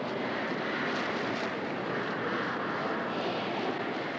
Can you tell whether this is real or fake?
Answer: real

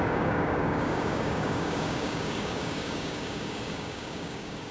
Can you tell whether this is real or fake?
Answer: fake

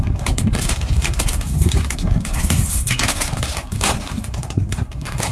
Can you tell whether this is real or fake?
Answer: fake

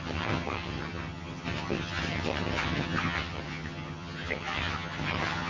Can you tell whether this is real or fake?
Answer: fake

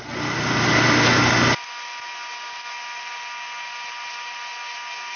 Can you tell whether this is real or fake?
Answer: real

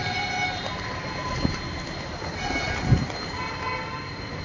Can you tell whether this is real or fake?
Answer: real